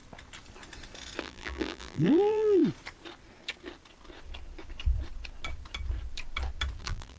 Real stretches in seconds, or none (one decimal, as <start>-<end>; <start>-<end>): 0.0-1.2; 2.6-6.8